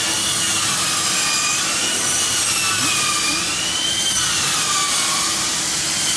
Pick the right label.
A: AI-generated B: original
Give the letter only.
B